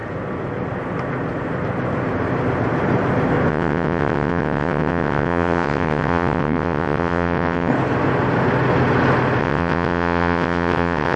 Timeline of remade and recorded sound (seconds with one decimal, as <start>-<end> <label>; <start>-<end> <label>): 0.0-3.5 recorded; 3.5-7.7 remade; 7.7-9.4 recorded; 9.4-11.2 remade